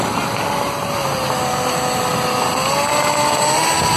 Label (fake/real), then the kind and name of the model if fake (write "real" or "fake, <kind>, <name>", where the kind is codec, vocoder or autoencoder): real